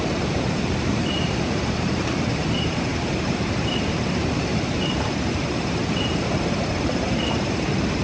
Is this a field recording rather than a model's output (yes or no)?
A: no